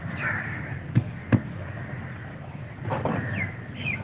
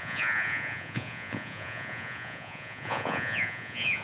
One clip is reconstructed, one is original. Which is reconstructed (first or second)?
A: second